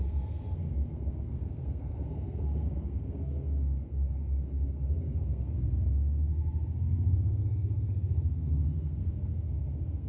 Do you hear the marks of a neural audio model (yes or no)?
yes